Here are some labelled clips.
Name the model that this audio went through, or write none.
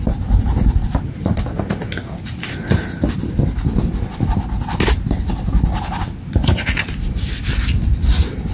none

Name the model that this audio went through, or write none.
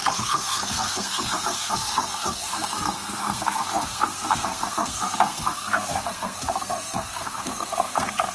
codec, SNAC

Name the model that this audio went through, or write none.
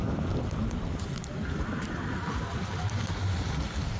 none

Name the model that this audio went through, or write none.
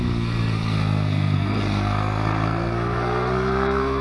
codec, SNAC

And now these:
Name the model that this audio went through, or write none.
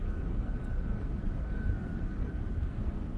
codec, SNAC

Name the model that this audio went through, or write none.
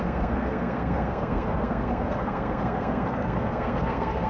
codec, SNAC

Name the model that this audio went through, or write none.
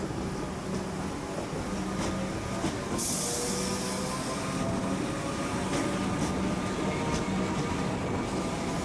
none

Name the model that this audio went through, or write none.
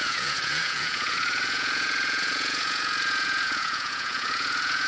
vocoder, Vocos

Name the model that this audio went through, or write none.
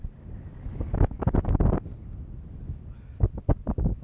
none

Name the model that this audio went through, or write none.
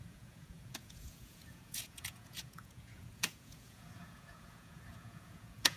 vocoder, Vocos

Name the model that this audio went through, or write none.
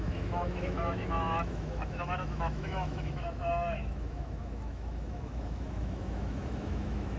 autoencoder, DAC-VAE